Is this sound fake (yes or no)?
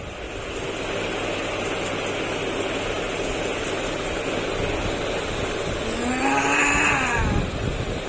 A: no